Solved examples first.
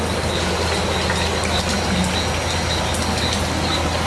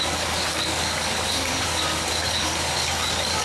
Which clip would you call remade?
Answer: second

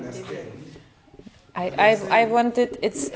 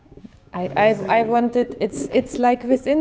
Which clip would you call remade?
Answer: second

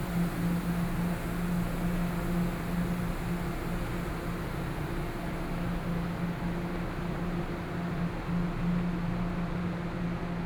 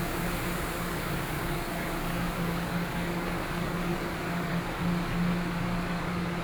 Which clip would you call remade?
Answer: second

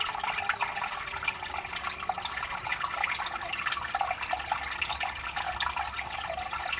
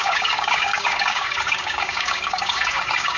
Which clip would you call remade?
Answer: second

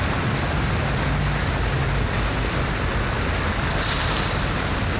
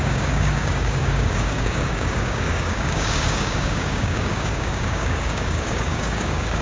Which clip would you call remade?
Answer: second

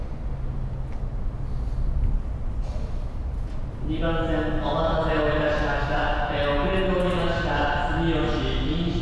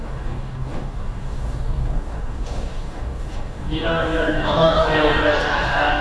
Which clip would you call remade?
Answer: second